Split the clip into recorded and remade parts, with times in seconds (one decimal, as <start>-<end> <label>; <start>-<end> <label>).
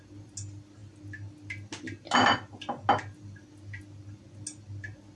0.0-5.2 recorded